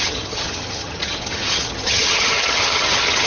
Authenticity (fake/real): fake